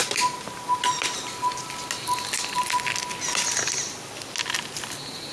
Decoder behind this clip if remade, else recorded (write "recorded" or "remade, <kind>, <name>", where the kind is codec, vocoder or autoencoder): recorded